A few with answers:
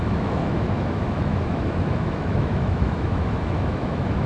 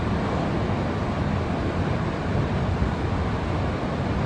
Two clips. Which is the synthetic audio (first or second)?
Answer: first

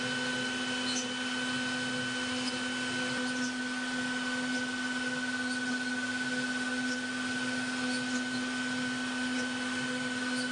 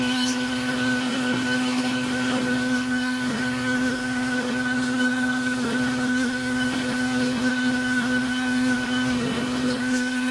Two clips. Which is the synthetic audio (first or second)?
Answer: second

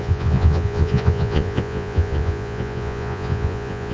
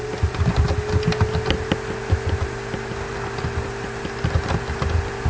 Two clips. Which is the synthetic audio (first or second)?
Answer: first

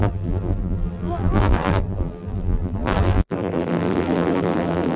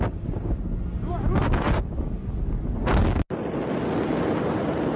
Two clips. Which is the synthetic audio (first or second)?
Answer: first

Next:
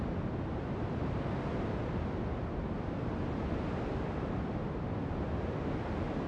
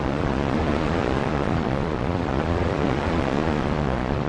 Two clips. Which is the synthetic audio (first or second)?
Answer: second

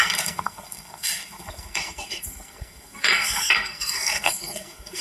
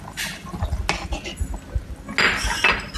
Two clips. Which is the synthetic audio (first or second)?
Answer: first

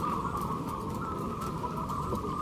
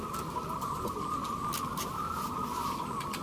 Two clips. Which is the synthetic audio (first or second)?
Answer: first